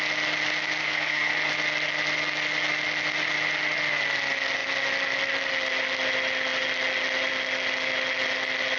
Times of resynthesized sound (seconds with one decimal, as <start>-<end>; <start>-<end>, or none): 0.8-1.3